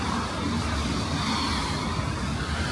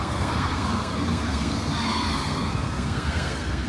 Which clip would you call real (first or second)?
first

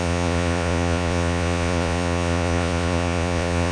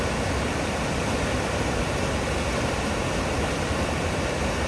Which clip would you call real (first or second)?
second